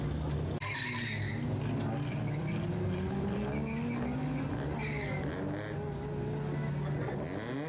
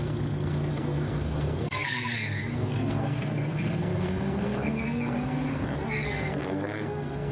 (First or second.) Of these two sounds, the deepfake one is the second